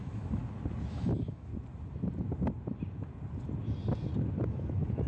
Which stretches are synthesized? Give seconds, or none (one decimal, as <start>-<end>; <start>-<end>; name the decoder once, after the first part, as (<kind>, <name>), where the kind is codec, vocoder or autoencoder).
0.0-0.4 (autoencoder, DAC-VAE); 0.9-1.5; 4.5-5.1